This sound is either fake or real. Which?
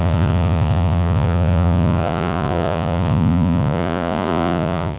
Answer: fake